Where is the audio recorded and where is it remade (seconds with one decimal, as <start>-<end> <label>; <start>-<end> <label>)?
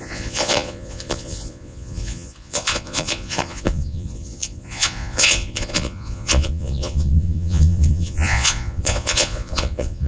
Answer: 0.0-10.1 remade